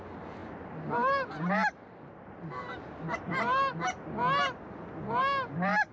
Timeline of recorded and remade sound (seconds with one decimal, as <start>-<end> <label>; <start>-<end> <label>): 0.0-0.4 recorded; 0.4-3.9 remade; 3.9-5.9 recorded